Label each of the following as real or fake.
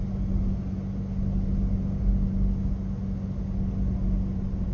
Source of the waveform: real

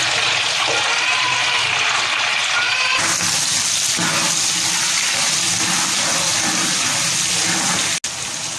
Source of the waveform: real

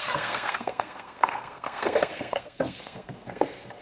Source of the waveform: fake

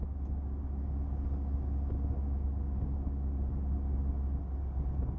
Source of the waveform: real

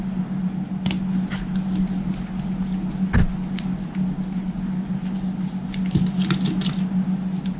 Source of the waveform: real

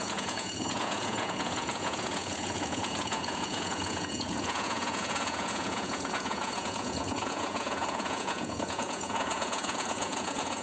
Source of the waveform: fake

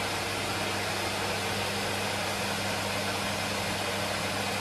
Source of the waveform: real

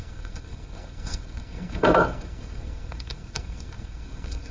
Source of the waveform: fake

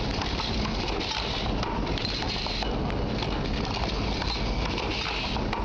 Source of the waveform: real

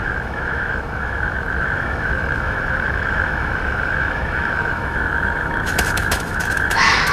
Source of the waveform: fake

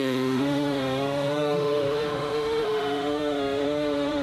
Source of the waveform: fake